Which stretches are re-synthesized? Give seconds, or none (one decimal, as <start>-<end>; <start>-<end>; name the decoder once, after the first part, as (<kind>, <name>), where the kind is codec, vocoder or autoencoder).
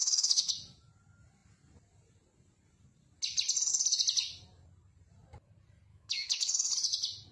0.0-0.5 (autoencoder, DAC-VAE); 5.9-6.7